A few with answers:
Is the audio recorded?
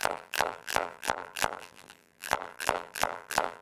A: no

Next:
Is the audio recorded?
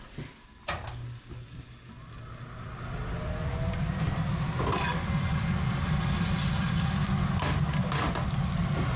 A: yes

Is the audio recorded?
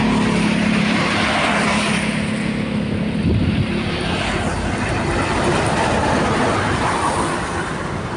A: no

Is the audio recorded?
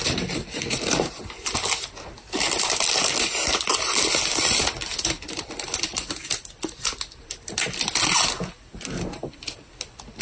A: yes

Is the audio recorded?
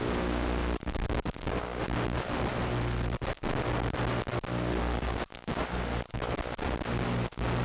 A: yes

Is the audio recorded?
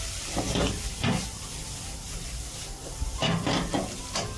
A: yes